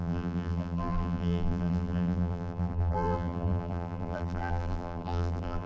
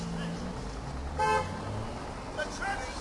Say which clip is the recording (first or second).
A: second